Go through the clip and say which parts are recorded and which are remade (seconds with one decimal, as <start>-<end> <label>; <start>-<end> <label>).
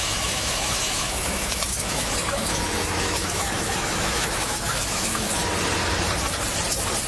0.0-5.4 remade; 5.4-7.1 recorded